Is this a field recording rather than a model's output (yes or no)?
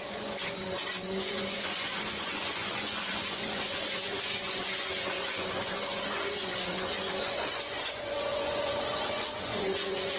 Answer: no